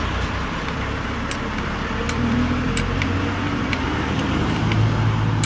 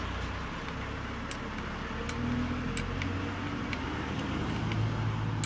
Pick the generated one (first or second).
first